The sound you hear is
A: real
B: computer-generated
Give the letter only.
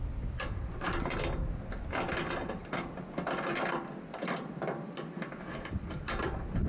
A